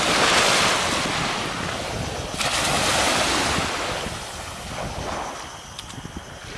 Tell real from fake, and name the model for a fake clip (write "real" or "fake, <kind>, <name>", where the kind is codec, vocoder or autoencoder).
real